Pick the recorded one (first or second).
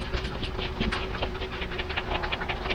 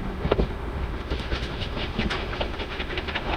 first